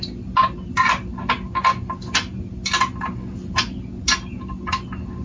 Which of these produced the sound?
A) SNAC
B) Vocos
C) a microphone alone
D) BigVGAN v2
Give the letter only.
C